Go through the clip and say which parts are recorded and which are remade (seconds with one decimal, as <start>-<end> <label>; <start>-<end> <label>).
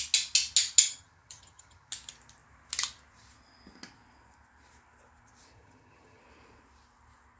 0.0-0.9 recorded; 0.9-1.9 remade; 1.9-5.5 recorded; 5.5-6.2 remade; 6.2-7.4 recorded